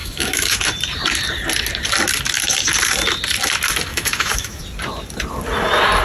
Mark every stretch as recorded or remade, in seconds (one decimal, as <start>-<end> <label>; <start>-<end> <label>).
0.0-0.6 remade; 0.6-3.9 recorded; 3.9-4.6 remade; 4.6-6.0 recorded